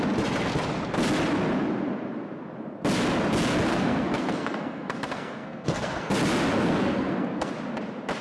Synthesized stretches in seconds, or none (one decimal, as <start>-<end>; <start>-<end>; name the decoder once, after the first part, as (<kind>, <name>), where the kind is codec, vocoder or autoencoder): 3.7-6.1 (codec, SNAC); 6.5-7.5